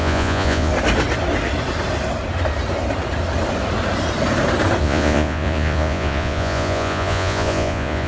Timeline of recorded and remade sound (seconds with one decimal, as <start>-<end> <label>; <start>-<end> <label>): 0.0-0.7 remade; 0.7-4.8 recorded; 4.8-8.1 remade